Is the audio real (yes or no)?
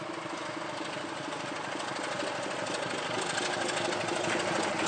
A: yes